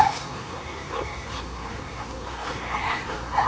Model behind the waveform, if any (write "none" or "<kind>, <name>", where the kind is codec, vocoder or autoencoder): codec, SNAC